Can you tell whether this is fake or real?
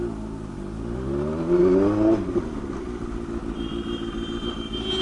real